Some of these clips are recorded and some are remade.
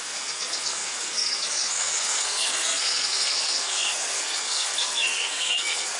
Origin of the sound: remade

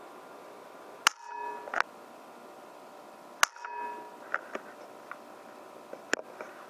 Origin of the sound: recorded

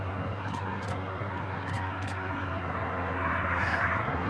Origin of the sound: remade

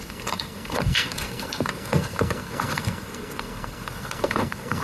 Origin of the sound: remade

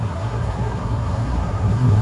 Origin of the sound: remade